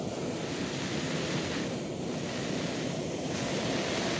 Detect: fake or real real